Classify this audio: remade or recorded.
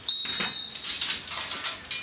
recorded